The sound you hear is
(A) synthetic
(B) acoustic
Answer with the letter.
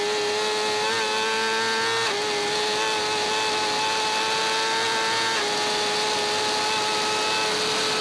B